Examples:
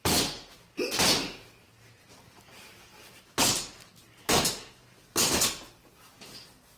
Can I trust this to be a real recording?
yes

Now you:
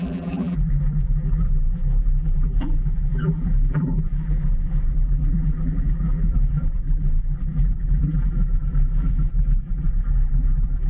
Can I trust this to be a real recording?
no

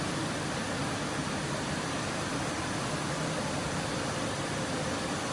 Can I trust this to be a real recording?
no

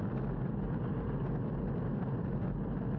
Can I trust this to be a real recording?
yes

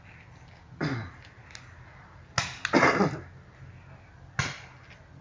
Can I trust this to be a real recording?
yes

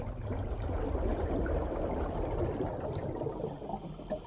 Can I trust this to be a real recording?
yes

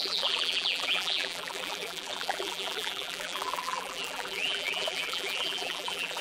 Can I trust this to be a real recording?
no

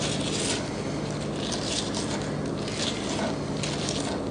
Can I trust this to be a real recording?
yes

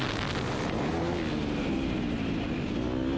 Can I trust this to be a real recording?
yes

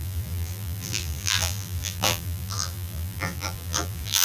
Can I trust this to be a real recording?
no